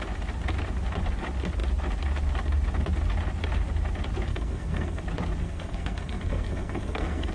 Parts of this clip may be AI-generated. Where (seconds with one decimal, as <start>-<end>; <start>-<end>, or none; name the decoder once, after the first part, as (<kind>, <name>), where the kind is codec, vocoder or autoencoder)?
4.3-5.0 (codec, SNAC); 5.4-7.3